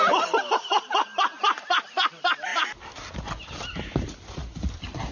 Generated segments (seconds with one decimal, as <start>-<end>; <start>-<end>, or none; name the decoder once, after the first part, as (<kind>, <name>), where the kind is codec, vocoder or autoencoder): none